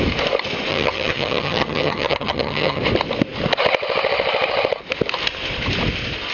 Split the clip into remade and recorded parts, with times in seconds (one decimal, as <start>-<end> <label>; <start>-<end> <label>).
0.0-0.7 recorded; 0.7-2.8 remade; 2.8-6.3 recorded